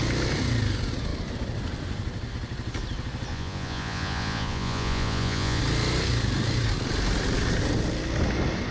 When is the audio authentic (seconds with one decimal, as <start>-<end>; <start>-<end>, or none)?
0.0-3.3; 5.6-8.7